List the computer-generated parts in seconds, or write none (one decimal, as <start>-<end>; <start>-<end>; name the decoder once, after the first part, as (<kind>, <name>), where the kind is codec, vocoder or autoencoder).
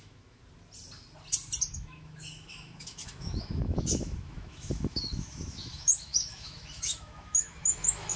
0.0-0.4 (autoencoder, DAC-VAE); 1.7-8.2